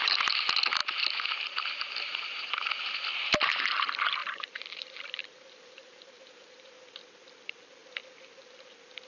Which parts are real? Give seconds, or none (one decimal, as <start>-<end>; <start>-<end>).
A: 0.0-4.2; 6.7-9.1